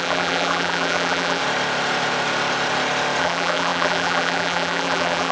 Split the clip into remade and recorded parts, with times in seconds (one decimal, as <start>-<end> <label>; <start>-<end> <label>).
0.0-1.4 remade; 1.4-3.2 recorded; 3.2-5.3 remade